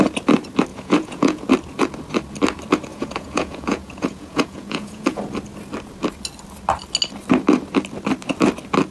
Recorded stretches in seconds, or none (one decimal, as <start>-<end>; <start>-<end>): 0.0-0.7; 1.4-2.9; 5.2-8.9